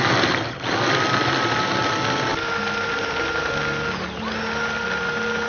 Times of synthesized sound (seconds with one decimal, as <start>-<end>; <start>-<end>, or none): none